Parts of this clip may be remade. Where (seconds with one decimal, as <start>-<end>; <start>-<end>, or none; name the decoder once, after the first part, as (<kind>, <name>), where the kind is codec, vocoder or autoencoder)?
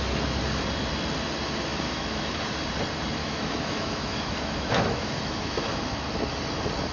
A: 1.7-2.3 (autoencoder, DAC-VAE); 3.2-5.8